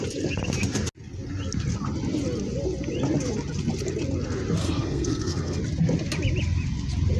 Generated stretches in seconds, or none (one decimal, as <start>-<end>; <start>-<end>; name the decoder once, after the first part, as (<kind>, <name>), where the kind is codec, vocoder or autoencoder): 4.6-5.6 (codec, SNAC)